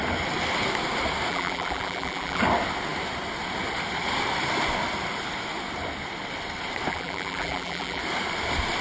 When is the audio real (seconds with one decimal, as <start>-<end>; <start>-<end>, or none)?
0.0-1.3; 2.4-6.9; 8.0-8.8